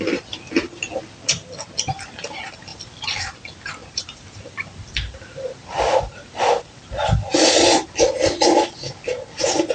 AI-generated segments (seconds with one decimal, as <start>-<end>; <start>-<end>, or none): 2.7-3.3; 3.8-7.3

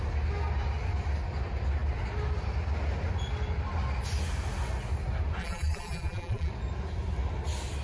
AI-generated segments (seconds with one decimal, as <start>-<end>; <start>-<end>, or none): 5.4-6.5

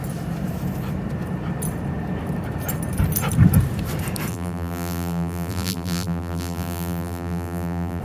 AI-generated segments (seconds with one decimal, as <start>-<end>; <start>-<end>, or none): 4.3-8.0

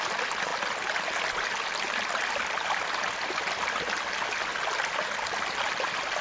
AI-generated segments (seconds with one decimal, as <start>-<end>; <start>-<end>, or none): none

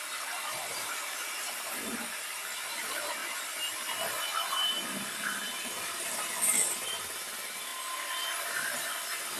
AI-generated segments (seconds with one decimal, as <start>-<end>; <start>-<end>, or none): 0.0-3.2; 4.4-7.7; 8.5-9.4

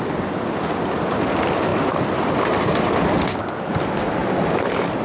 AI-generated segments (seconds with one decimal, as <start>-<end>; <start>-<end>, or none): 4.2-5.0